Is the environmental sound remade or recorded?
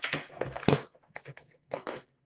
remade